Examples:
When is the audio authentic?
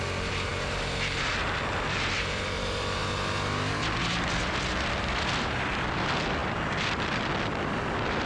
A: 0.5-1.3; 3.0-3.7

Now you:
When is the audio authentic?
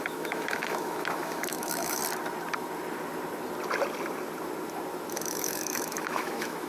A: 2.0-5.1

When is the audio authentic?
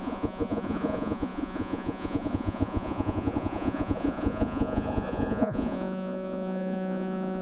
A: none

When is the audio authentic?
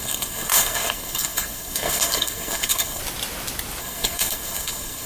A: 3.0-3.8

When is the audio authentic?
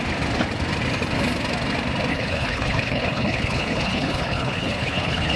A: 0.0-2.1